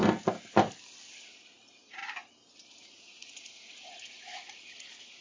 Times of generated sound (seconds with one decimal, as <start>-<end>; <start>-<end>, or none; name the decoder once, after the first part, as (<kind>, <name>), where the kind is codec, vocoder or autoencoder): 1.1-2.0 (vocoder, Vocos); 2.7-5.2